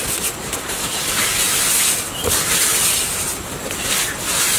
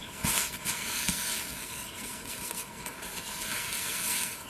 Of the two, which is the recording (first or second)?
first